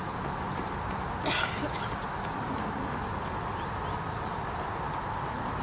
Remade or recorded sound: recorded